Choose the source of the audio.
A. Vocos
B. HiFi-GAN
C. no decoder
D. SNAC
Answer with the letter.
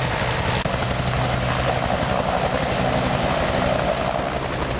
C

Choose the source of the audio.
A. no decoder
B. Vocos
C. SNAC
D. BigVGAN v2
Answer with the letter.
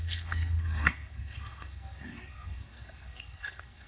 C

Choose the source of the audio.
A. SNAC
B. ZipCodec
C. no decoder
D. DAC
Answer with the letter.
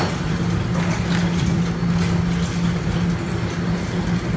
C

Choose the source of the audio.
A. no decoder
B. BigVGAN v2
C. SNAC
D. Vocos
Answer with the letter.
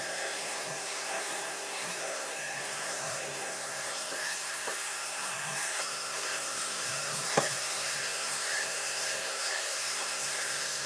C